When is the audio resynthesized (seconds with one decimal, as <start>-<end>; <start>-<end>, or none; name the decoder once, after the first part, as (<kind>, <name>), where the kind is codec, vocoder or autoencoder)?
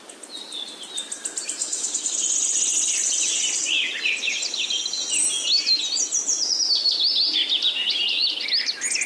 1.6-2.2 (autoencoder, DAC-VAE)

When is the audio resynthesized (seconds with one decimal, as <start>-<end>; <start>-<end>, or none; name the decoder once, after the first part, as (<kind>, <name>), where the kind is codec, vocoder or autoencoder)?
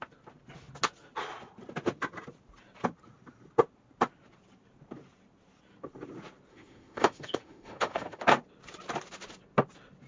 6.5-8.2 (autoencoder, DAC-VAE)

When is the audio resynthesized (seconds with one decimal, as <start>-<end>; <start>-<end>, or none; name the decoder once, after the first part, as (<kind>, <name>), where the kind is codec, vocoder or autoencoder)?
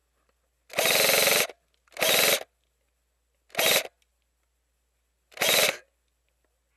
none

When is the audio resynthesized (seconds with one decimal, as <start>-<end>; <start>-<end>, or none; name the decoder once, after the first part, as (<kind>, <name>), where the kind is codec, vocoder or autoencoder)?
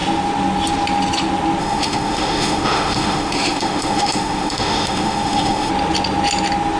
1.6-5.7 (autoencoder, DAC-VAE)